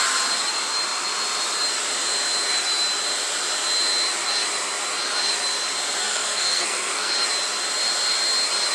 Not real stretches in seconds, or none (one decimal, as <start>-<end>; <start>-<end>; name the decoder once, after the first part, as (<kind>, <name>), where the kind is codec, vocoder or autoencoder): 6.0-7.1 (codec, SNAC)